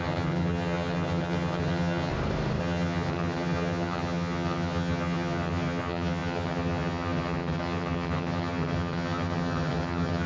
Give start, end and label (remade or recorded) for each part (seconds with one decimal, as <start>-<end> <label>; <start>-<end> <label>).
0.0-2.1 remade; 2.1-2.6 recorded; 2.6-10.3 remade